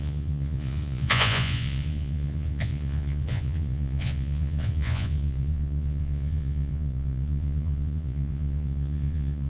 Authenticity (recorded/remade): remade